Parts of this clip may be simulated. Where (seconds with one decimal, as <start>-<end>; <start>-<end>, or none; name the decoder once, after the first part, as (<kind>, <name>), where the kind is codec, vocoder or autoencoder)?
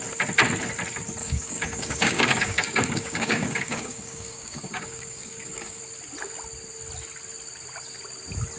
1.2-5.8 (codec, DAC)